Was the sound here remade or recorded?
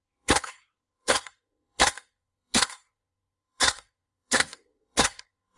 remade